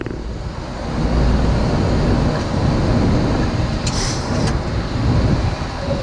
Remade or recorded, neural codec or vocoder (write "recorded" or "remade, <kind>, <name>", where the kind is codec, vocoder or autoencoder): recorded